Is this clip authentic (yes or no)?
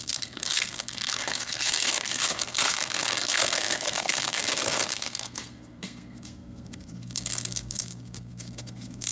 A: no